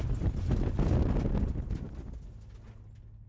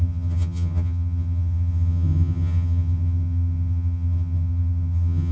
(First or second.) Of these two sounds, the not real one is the second